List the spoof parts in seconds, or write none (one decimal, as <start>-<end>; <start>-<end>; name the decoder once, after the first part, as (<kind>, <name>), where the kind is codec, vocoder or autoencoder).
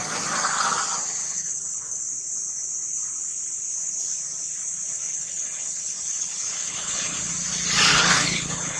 1.2-2.0 (codec, HILCodec); 4.9-7.3; 7.9-8.8